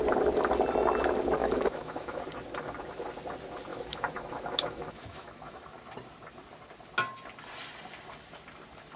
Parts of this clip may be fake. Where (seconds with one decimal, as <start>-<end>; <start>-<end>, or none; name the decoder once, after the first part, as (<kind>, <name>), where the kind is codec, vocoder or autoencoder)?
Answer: 1.4-2.2 (autoencoder, DAC-VAE); 3.7-5.6